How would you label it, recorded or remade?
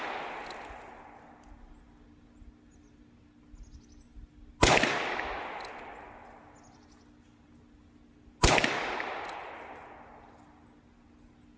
recorded